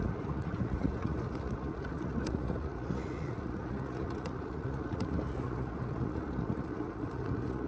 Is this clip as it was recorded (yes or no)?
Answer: no